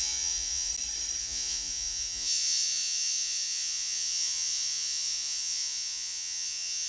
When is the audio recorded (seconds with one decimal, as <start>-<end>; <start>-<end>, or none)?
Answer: 0.7-1.2